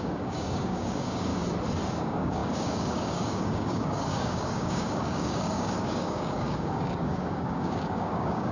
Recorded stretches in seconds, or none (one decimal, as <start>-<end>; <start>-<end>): 1.3-2.0